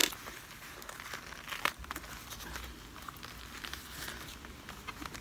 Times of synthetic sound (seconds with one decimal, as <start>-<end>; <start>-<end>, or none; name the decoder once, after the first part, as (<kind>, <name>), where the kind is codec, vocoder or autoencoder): none